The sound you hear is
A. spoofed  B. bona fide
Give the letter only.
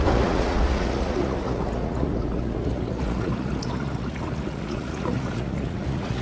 A